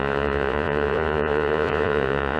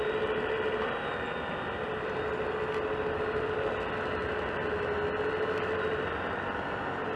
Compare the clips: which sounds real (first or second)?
second